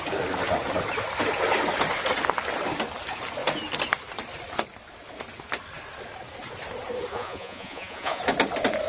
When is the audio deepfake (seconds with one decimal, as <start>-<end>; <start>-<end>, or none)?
7.1-8.2